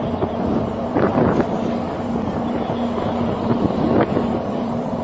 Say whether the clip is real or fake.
fake